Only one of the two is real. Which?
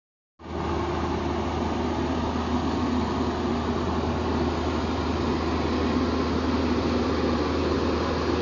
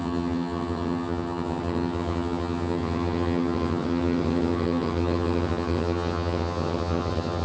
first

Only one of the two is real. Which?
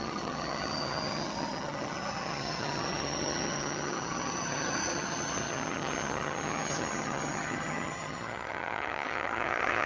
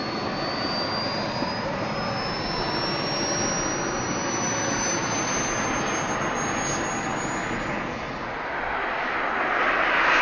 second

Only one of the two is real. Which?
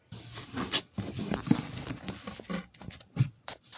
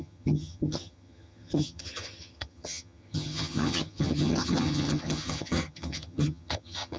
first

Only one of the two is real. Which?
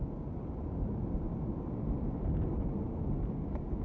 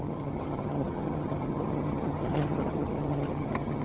first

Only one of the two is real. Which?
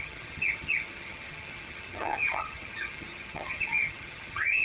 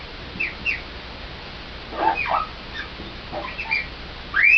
second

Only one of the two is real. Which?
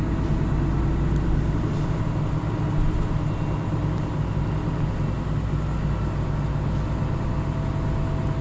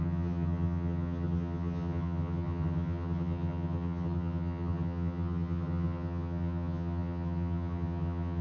first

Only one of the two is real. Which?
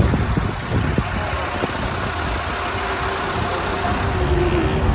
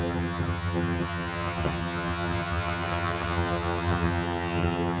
first